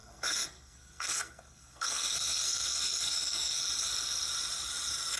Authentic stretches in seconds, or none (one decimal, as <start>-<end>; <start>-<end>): 3.6-5.2